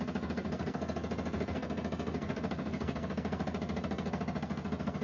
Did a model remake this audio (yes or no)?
yes